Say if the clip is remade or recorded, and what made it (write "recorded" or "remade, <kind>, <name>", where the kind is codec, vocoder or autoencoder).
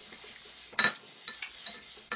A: recorded